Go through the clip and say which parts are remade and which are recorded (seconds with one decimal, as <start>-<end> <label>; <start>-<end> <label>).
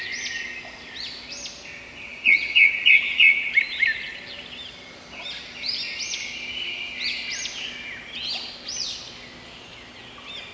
0.0-2.1 recorded; 2.1-3.5 remade; 3.5-10.5 recorded